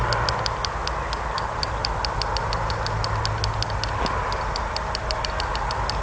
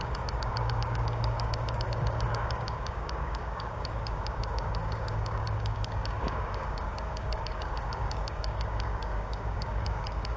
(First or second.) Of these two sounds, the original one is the first